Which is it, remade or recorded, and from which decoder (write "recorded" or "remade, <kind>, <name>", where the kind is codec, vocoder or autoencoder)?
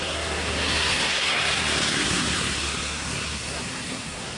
remade, codec, SNAC